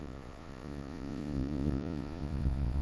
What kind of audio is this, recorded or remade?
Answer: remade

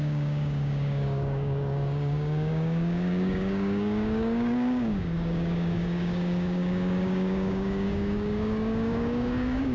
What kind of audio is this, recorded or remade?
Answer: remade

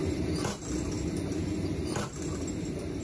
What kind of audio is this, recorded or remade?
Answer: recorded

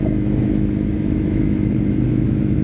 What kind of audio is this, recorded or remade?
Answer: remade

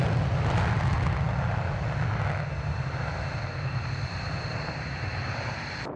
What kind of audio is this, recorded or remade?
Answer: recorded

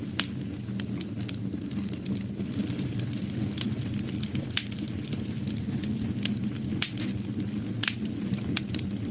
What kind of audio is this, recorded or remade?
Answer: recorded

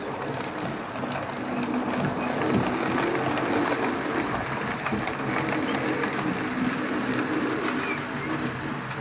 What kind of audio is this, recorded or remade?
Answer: recorded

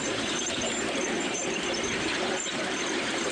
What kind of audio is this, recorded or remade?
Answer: recorded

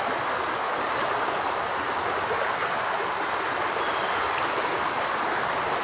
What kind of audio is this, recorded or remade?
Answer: recorded